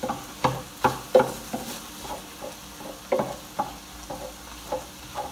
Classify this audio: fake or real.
real